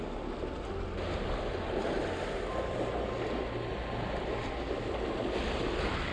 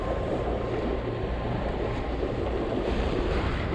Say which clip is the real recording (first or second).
first